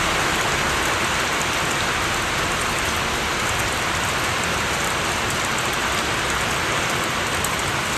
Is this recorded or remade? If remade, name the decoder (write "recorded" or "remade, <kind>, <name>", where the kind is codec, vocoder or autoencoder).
recorded